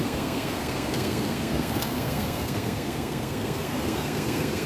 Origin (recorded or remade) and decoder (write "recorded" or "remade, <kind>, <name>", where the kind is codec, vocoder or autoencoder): remade, codec, SNAC